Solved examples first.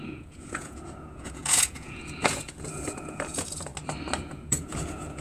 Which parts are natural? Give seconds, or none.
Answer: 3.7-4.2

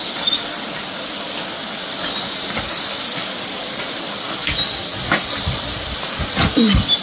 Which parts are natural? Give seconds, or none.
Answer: 0.0-7.0

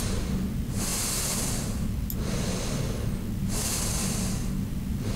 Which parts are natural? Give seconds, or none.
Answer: 0.0-5.2

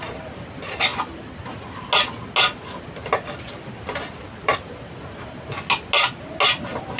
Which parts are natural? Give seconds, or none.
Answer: 0.0-7.0

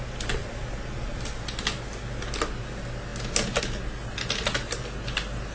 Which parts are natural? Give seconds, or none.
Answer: 0.0-0.4; 1.2-5.5

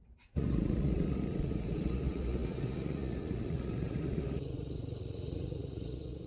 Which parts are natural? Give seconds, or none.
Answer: none

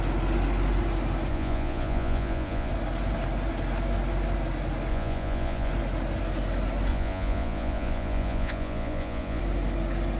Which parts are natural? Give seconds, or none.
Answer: 0.0-1.3; 2.7-4.9; 5.7-6.9; 9.4-10.2